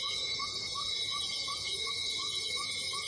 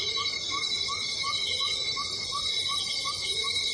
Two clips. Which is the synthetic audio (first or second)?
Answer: first